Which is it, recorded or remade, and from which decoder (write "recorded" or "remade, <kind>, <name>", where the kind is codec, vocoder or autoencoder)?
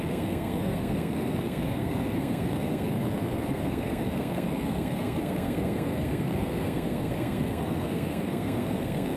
remade, codec, SNAC